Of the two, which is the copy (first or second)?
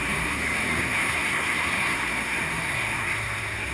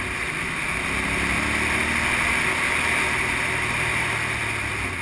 first